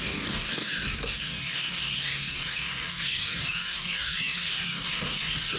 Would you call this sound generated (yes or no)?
yes